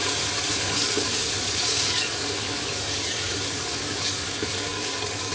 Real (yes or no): no